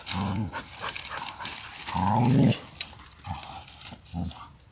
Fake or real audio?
real